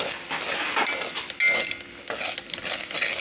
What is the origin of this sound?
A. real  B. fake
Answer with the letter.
A